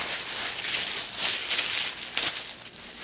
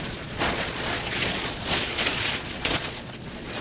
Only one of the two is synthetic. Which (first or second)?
second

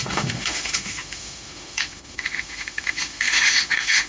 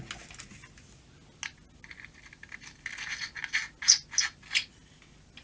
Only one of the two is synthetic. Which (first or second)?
first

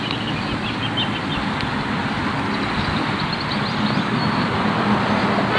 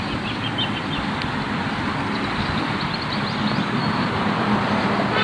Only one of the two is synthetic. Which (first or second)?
second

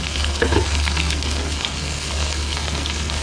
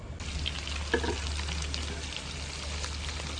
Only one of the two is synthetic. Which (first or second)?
first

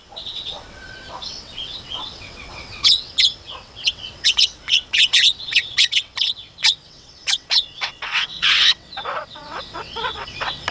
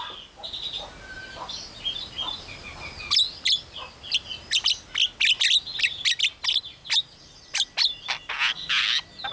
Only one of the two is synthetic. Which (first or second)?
first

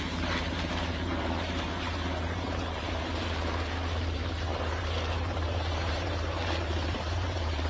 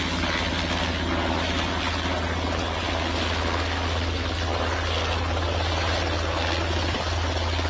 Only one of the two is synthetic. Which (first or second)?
first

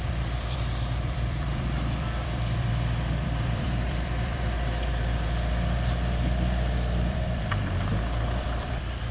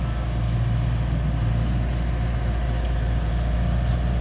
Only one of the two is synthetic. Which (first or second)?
first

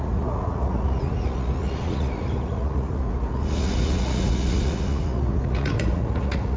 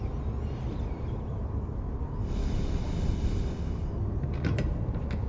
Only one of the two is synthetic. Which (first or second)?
first